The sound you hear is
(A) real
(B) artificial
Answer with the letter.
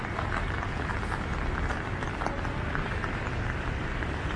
A